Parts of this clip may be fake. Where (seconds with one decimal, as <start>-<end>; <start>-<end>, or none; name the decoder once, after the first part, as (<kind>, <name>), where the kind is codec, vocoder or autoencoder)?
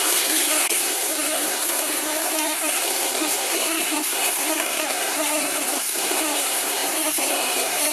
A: 0.0-7.9 (codec, SNAC)